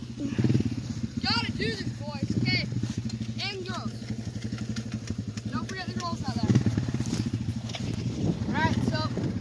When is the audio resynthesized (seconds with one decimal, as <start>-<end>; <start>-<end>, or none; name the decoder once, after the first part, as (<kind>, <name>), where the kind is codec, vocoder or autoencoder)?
5.1-9.4 (vocoder, BigVGAN v2)